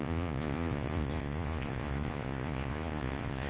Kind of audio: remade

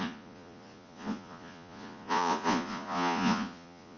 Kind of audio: remade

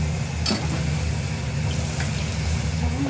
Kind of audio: recorded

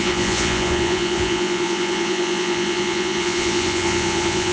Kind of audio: remade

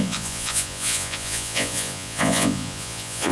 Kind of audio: remade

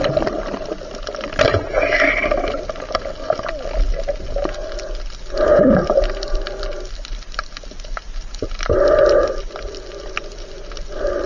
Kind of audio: recorded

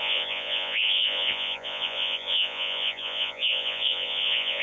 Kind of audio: remade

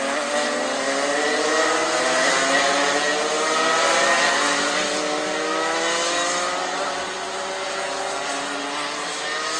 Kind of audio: recorded